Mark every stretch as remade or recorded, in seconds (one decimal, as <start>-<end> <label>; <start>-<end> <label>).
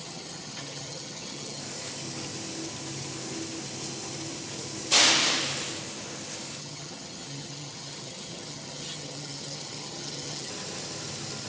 0.0-1.6 remade; 1.6-6.6 recorded; 6.6-10.5 remade; 10.5-11.5 recorded